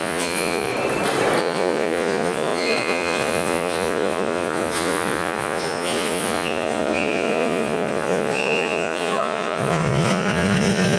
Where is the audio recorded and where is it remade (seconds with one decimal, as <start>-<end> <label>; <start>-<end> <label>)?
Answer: 0.0-0.7 remade; 0.7-1.4 recorded; 1.4-11.0 remade